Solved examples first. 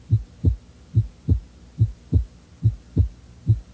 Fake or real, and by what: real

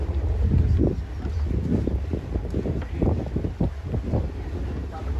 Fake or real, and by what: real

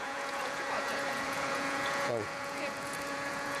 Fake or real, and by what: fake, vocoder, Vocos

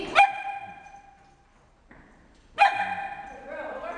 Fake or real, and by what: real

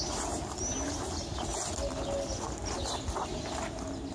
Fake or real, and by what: real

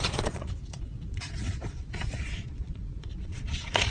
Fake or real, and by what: fake, vocoder, Vocos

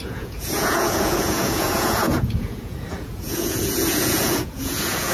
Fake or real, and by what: fake, vocoder, Vocos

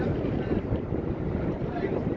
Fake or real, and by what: real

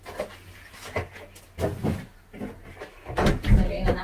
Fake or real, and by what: real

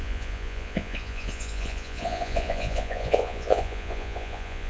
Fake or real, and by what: fake, vocoder, Vocos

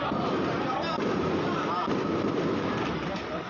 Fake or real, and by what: real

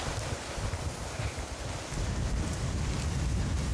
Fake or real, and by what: real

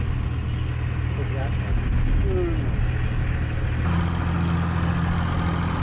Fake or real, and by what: real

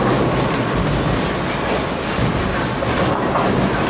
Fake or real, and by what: real